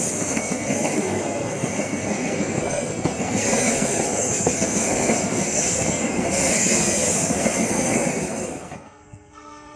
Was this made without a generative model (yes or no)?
no